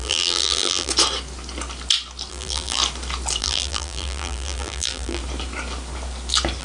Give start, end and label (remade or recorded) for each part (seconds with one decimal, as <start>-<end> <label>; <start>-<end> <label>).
0.0-0.9 remade; 0.9-2.3 recorded; 2.3-2.8 remade; 2.8-3.4 recorded; 3.4-5.2 remade; 5.2-6.6 recorded